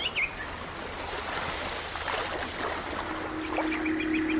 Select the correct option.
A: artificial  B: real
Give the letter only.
B